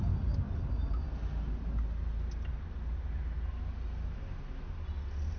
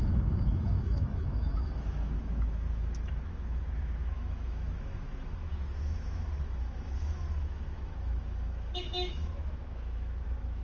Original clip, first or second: first